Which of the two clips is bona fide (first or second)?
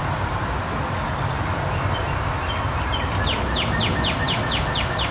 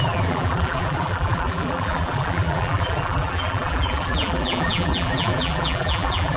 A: first